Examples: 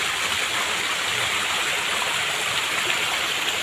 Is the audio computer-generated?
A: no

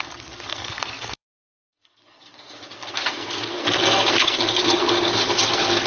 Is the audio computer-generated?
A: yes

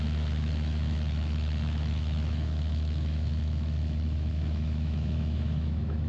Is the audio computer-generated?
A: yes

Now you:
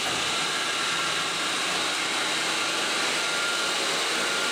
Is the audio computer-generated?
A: no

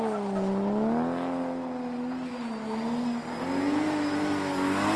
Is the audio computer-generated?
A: no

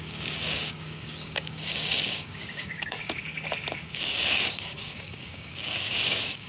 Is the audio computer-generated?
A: yes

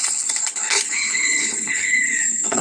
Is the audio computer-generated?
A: yes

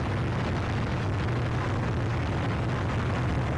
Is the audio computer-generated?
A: no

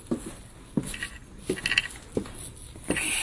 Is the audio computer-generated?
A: no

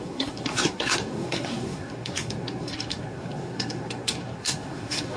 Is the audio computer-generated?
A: yes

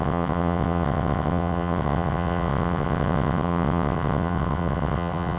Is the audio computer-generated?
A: yes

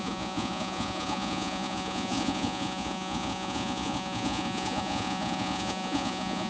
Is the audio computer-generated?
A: yes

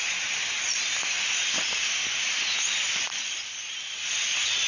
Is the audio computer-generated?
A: no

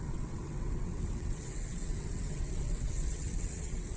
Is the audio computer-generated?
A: yes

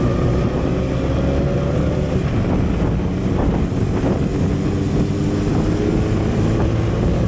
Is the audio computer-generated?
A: no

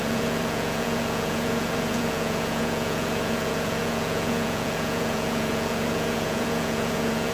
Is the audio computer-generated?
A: yes